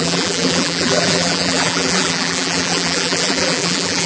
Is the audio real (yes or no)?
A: no